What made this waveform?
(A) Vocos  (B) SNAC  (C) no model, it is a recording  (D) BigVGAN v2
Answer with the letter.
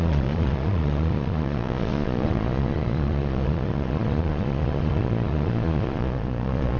A